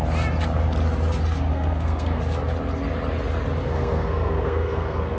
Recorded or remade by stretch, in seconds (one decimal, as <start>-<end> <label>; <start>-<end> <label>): 0.0-1.5 recorded; 1.5-2.2 remade; 2.2-3.6 recorded; 3.6-5.2 remade